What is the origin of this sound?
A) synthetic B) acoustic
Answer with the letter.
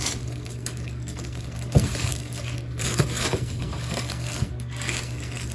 A